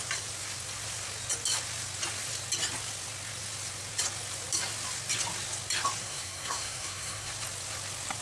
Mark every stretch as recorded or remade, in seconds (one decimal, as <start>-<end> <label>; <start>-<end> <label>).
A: 0.0-6.0 recorded; 6.0-7.3 remade; 7.3-8.2 recorded